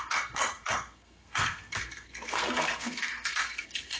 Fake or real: fake